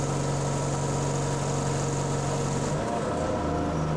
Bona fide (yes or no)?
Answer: yes